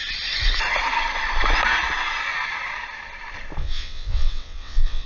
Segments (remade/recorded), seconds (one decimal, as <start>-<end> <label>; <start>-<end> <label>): 0.0-3.6 recorded; 3.6-5.1 remade